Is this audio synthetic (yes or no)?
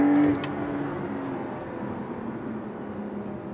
no